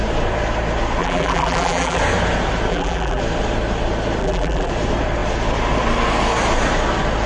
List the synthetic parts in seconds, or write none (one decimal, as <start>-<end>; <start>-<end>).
1.0-2.0; 2.7-3.2; 4.2-4.7